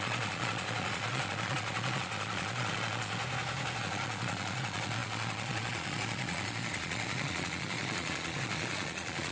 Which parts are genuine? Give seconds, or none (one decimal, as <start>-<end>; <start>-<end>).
3.2-3.8